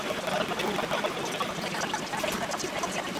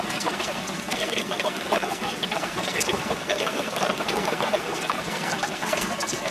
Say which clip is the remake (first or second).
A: second